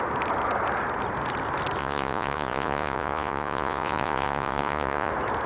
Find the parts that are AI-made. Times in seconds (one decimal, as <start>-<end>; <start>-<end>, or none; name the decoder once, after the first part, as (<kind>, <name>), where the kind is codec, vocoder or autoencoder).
1.8-5.1 (vocoder, Vocos)